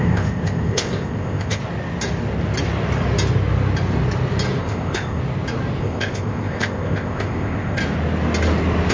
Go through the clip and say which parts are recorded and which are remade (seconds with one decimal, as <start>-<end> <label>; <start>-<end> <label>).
0.0-1.6 remade; 1.6-4.6 recorded; 4.6-5.2 remade; 5.2-5.8 recorded; 5.8-7.8 remade; 7.8-8.9 recorded